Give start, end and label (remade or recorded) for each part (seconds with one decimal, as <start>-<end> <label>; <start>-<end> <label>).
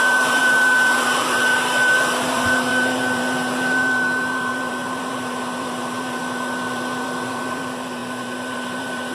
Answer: 0.0-9.1 remade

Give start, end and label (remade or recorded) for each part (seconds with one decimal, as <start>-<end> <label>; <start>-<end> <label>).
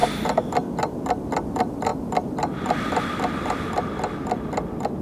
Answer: 0.0-1.5 recorded; 1.5-1.9 remade; 1.9-5.0 recorded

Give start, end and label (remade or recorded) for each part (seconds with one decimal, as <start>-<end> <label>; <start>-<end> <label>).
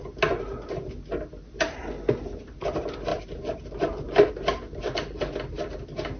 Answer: 0.0-3.1 recorded; 3.1-4.3 remade; 4.3-6.2 recorded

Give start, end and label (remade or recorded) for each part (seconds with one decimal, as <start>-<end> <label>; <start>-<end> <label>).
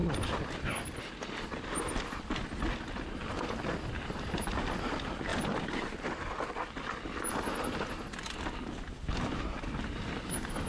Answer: 0.0-5.3 recorded; 5.3-7.9 remade; 7.9-10.7 recorded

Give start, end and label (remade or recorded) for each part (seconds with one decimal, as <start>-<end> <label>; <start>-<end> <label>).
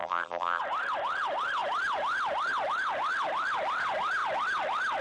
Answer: 0.0-0.6 remade; 0.6-5.0 recorded